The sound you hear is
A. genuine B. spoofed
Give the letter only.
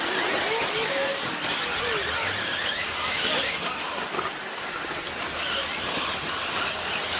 A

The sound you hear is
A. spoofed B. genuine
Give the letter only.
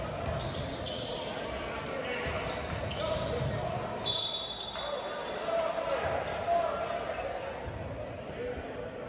B